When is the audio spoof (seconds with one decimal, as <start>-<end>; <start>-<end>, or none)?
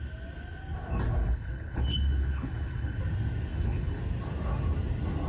1.2-3.0; 3.5-4.0